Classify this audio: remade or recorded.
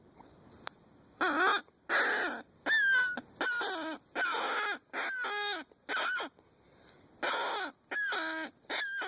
recorded